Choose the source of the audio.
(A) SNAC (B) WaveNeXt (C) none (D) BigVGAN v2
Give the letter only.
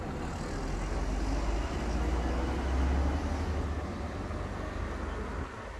C